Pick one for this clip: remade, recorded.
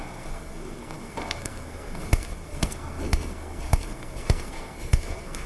remade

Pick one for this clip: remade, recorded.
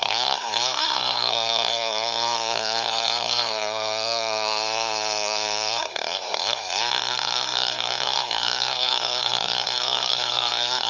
remade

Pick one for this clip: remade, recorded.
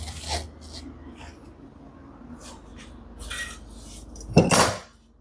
recorded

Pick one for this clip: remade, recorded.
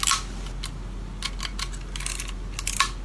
recorded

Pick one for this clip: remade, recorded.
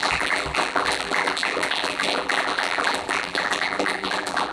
remade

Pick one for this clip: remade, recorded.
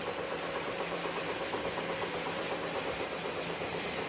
recorded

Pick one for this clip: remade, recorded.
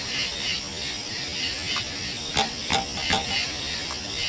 recorded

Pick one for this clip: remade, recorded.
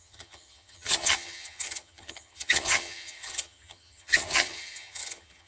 remade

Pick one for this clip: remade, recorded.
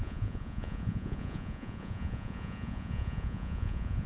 remade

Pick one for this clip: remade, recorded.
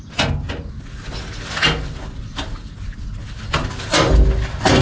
recorded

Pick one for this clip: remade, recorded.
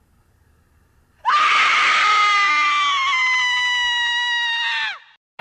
recorded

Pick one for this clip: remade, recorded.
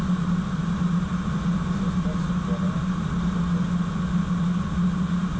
recorded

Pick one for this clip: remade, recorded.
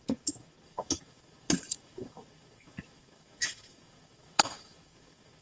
remade